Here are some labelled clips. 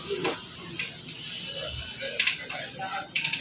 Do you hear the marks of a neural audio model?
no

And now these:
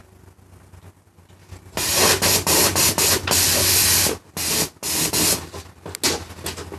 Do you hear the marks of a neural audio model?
no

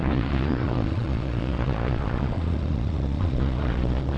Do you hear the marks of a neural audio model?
yes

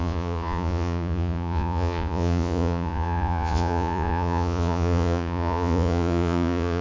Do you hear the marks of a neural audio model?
yes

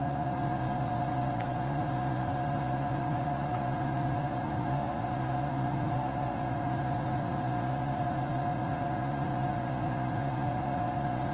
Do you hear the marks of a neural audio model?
yes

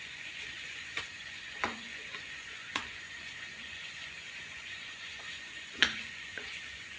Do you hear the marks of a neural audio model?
yes